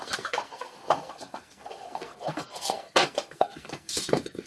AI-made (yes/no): yes